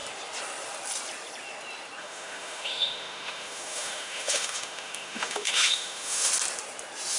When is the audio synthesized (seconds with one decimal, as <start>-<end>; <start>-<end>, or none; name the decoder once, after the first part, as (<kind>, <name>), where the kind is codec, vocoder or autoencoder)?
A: 2.0-6.3 (autoencoder, DAC-VAE)